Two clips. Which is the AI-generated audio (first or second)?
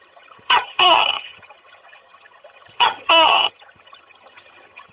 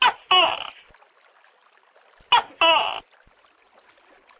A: first